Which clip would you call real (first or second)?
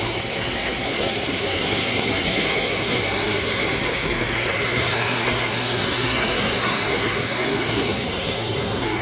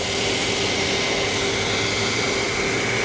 second